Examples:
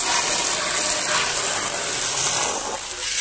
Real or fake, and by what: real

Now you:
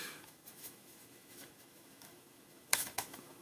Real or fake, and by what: fake, autoencoder, DAC-VAE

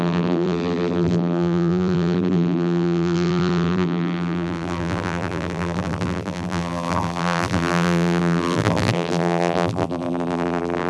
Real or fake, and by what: fake, vocoder, BigVGAN v2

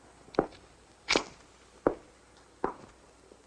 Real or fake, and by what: real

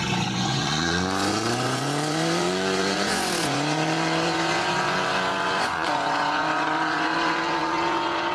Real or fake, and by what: fake, vocoder, Vocos